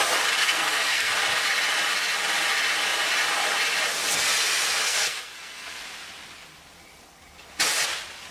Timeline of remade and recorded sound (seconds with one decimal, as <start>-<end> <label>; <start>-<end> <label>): 0.0-0.4 recorded; 0.4-1.1 remade; 1.1-4.8 recorded; 4.8-5.8 remade; 5.8-8.3 recorded